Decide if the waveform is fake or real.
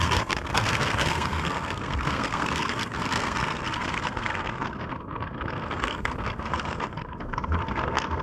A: fake